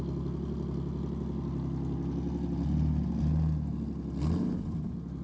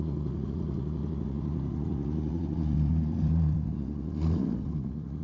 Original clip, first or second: first